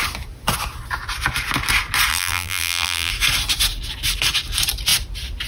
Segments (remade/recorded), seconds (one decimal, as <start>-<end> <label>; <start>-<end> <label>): 0.0-2.1 recorded; 2.1-3.1 remade; 3.1-5.5 recorded